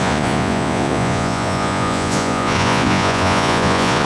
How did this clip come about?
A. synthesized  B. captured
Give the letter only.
A